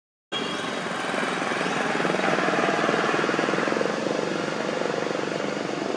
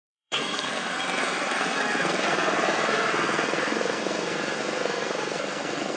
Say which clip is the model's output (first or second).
second